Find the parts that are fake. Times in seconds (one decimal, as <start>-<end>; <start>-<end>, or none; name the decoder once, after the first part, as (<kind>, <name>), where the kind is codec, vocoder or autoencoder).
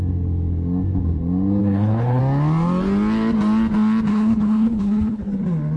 1.6-2.2 (codec, HILCodec); 4.1-5.3